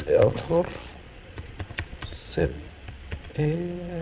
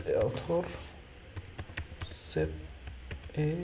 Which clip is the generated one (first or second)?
first